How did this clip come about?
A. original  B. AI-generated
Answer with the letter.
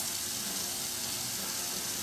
A